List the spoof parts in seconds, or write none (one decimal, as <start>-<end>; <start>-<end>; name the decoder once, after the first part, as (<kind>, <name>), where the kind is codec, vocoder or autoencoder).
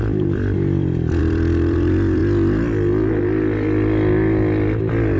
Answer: 0.0-2.2 (vocoder, BigVGAN v2)